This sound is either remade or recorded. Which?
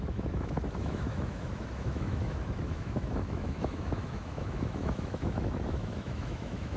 remade